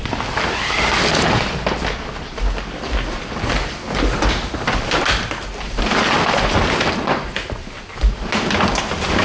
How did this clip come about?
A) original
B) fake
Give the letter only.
A